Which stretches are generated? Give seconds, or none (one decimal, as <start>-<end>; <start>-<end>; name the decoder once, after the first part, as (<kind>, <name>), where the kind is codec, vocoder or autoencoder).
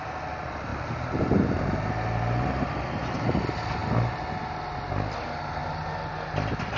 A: none